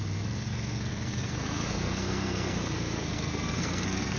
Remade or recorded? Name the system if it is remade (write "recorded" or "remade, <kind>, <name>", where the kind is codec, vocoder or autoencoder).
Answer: remade, codec, SNAC